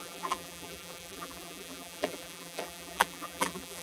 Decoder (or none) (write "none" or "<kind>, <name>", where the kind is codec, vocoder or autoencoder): vocoder, BigVGAN v2